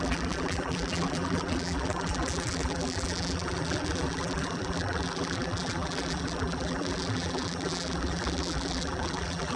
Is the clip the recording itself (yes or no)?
no